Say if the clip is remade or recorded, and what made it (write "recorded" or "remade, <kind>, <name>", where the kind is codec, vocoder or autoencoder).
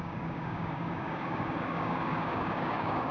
remade, codec, DAC